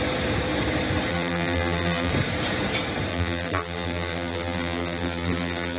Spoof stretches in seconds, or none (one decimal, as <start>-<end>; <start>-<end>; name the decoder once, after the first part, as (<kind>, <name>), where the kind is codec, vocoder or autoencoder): 1.1-2.1 (vocoder, BigVGAN v2); 3.1-5.8